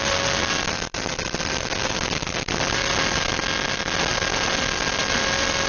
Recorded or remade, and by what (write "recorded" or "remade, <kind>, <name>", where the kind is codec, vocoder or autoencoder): recorded